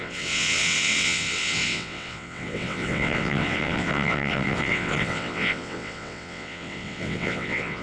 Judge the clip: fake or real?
fake